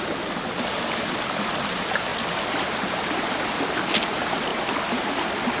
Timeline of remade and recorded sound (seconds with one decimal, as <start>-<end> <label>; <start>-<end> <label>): 0.0-5.6 recorded